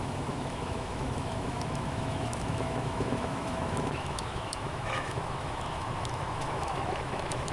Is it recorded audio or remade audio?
remade